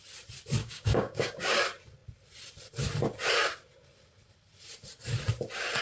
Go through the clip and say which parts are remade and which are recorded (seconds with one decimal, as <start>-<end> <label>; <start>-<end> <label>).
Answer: 0.0-0.6 recorded; 0.6-1.6 remade; 1.6-5.8 recorded